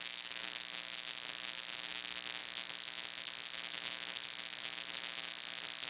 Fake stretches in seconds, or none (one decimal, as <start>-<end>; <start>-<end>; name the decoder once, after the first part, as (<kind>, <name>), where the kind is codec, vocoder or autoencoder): 0.4-1.9 (vocoder, BigVGAN v2); 2.4-5.9